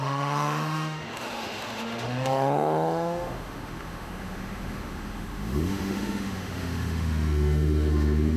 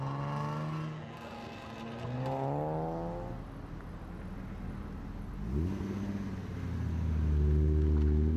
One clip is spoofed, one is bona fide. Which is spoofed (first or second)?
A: first